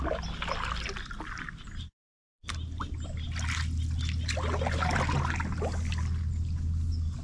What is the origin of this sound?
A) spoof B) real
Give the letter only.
B